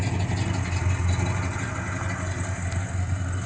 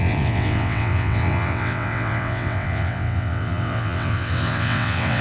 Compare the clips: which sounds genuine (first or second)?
first